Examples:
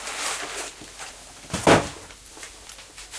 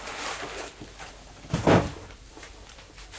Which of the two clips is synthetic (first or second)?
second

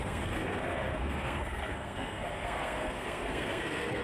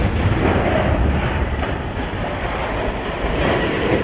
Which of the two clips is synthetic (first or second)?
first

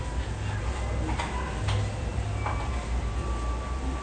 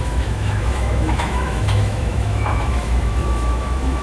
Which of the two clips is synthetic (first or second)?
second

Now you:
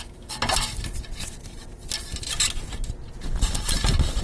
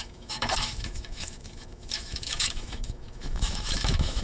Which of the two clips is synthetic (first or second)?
second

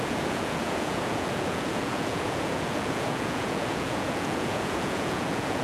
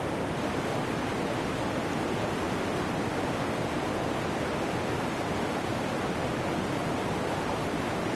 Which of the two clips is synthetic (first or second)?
first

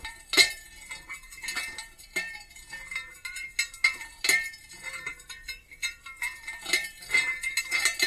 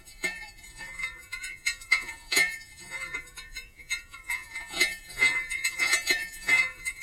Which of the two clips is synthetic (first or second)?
second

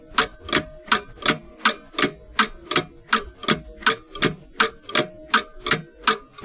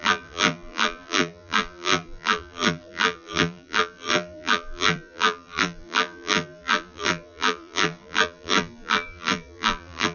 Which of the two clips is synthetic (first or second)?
second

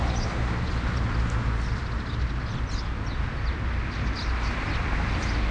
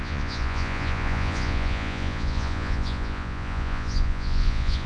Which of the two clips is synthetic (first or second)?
second